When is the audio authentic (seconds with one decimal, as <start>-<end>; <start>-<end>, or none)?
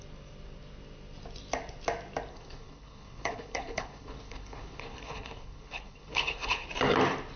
0.0-2.3; 6.7-7.4